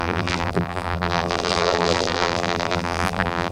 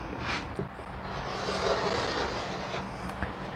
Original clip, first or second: second